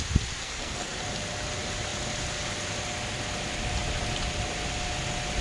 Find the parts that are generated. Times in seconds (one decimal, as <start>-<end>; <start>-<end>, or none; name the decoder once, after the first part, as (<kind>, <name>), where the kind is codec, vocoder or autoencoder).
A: 0.4-1.0 (codec, SNAC)